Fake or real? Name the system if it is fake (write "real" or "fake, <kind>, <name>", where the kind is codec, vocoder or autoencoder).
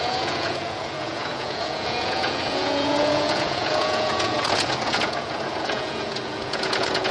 fake, vocoder, Vocos